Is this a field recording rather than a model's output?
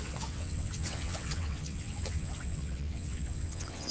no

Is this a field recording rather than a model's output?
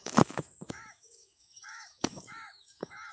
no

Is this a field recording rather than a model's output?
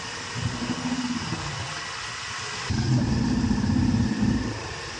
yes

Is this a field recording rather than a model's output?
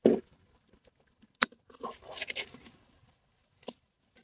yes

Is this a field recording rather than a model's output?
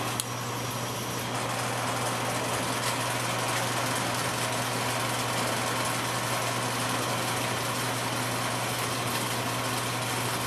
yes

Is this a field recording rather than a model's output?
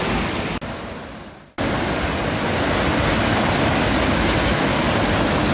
yes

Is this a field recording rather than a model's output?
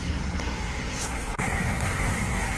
no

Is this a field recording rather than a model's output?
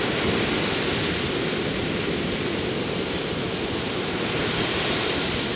yes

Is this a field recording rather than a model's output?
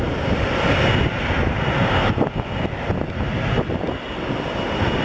yes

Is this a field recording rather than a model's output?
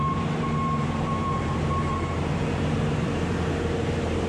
no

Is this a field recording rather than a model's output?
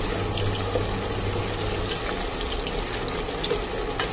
yes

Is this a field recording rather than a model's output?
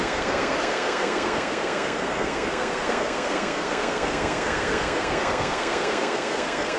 no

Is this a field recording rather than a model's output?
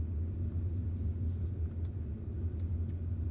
yes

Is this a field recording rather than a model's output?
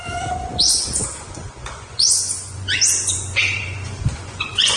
no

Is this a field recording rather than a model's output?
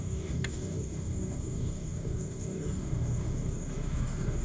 no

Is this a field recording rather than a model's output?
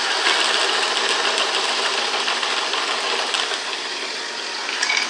yes